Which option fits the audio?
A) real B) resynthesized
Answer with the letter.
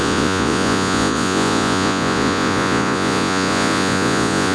B